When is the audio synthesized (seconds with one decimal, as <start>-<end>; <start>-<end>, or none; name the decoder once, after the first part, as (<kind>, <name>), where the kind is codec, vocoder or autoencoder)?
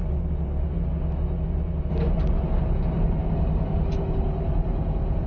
none